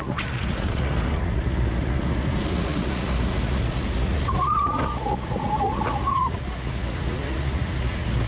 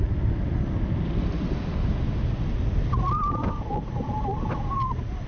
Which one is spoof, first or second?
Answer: first